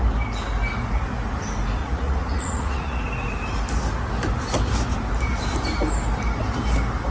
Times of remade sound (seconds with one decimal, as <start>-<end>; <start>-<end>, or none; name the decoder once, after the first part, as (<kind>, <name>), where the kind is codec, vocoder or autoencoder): 1.8-3.0 (vocoder, Vocos)